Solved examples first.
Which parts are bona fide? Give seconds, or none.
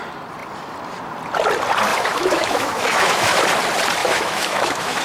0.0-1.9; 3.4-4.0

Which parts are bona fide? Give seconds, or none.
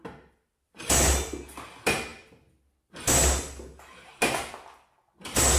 0.0-5.6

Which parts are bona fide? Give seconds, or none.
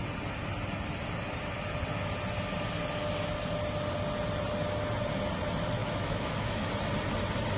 0.0-5.8; 6.7-7.6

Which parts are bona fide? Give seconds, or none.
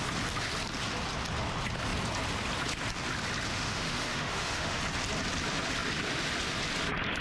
0.0-3.5; 4.8-7.2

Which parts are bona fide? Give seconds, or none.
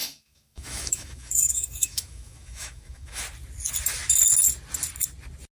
3.2-5.6